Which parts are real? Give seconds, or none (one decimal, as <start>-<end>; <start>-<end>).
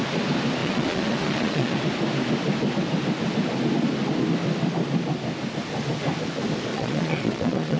0.0-0.6; 1.8-6.7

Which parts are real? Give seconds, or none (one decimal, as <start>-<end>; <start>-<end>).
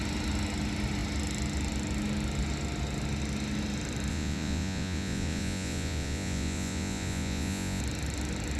0.0-4.1; 7.8-8.6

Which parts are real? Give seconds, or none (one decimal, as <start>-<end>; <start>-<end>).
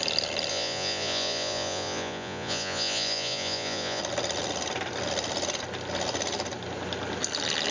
0.0-0.5; 4.0-7.7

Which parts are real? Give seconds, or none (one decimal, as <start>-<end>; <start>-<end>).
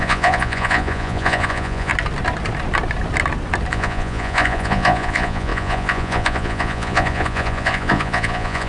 1.9-3.7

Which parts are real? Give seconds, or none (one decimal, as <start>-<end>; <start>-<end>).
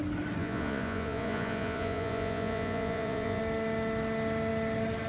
0.0-0.4; 3.4-5.1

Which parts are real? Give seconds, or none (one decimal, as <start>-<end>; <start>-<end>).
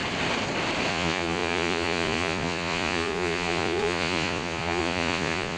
0.0-0.9